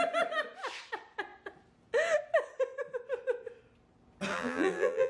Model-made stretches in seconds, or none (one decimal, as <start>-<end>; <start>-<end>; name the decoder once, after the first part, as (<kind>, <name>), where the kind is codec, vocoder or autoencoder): 4.3-5.1 (vocoder, BigVGAN v2)